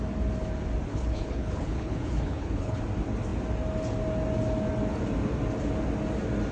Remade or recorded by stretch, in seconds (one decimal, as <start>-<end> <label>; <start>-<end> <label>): 0.0-0.9 recorded; 0.9-2.8 remade; 2.8-6.5 recorded

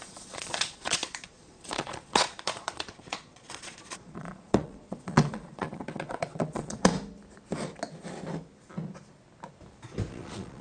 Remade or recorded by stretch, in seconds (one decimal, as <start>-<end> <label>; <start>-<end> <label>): 0.0-6.9 remade; 6.9-10.1 recorded; 10.1-10.6 remade

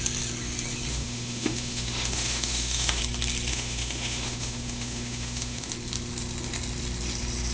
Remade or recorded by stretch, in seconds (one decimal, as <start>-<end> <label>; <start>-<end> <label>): 0.0-0.9 recorded; 0.9-3.0 remade; 3.0-3.5 recorded; 3.5-5.7 remade; 5.7-7.5 recorded

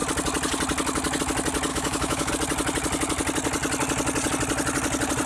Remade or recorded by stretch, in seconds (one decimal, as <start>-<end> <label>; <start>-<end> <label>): 0.0-1.7 recorded; 1.7-2.3 remade; 2.3-5.3 recorded

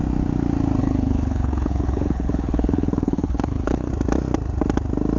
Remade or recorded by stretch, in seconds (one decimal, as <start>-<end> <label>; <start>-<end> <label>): 0.0-0.8 recorded; 0.8-3.9 remade; 3.9-5.2 recorded

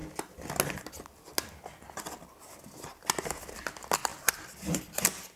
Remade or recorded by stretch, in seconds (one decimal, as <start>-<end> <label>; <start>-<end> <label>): 0.0-5.4 recorded